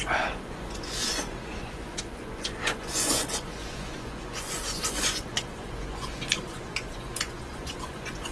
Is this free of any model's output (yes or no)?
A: no